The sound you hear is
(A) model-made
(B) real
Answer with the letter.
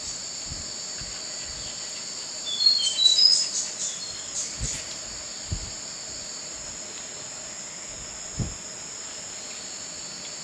B